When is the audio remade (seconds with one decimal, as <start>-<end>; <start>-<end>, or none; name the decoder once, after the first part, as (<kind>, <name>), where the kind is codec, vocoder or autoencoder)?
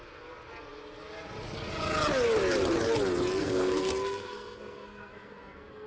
3.4-5.9 (codec, SNAC)